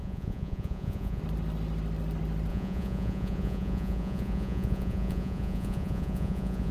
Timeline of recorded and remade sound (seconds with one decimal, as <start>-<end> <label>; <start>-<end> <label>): 0.0-1.2 remade; 1.2-2.5 recorded; 2.5-6.7 remade